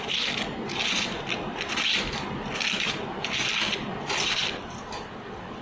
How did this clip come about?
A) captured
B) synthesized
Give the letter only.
A